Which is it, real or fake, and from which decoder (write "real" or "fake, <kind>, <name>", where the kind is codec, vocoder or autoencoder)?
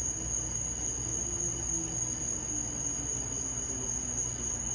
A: real